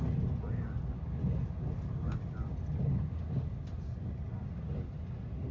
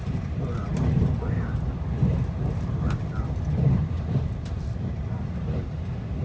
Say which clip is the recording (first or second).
first